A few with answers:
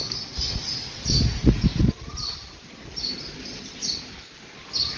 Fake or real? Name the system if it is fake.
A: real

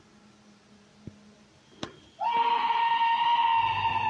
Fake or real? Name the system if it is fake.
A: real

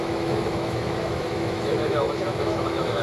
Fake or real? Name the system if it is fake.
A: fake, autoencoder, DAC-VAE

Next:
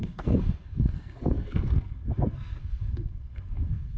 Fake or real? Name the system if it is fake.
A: fake, codec, SNAC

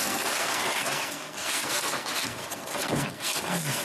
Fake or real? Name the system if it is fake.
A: fake, codec, SNAC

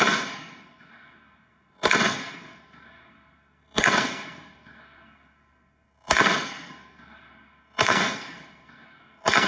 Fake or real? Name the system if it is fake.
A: fake, codec, SNAC